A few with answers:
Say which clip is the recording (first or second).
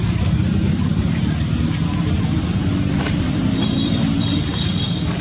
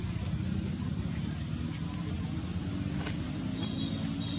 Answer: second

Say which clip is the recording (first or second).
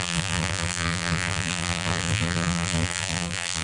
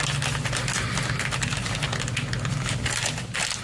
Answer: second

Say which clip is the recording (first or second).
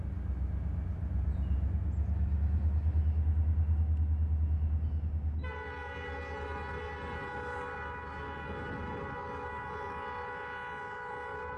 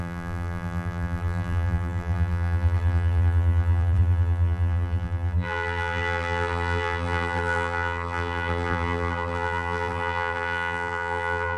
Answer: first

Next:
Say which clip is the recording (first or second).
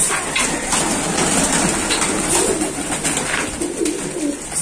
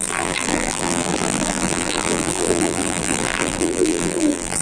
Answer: first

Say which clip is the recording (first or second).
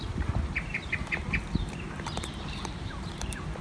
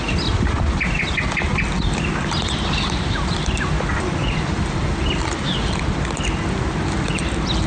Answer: second